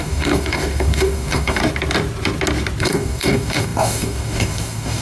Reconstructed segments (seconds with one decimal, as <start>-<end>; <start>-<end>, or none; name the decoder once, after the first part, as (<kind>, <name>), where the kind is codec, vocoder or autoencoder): 0.0-1.6 (codec, DAC); 2.8-5.0